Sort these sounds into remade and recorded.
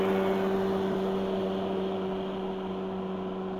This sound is recorded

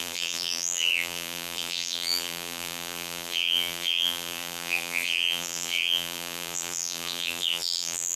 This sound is remade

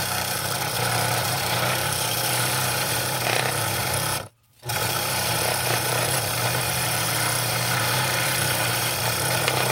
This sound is remade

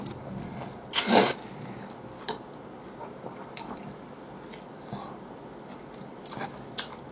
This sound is recorded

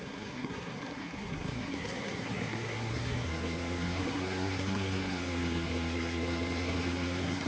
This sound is remade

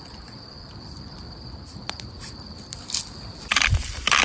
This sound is remade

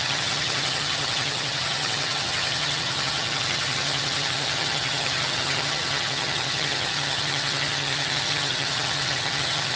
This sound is remade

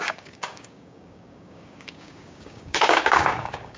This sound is remade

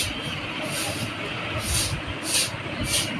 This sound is recorded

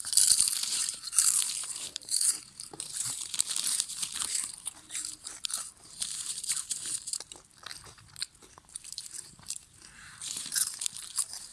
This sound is remade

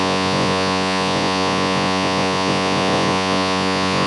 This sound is remade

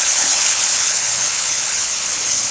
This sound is remade